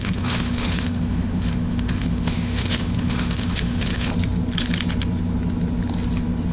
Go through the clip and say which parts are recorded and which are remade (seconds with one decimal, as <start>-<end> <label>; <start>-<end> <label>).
0.0-4.1 remade; 4.1-6.5 recorded